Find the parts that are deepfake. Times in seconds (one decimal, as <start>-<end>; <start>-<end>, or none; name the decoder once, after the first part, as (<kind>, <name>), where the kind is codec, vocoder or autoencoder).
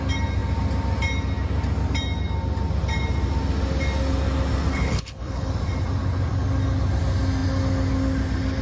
4.7-5.5 (codec, HILCodec)